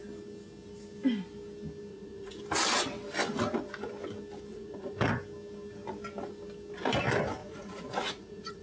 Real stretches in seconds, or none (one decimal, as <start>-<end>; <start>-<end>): 0.0-1.9; 2.4-4.5; 5.1-7.4